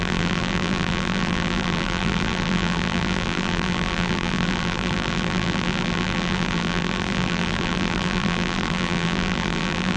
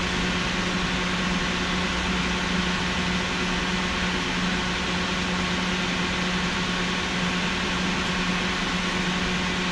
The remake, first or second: first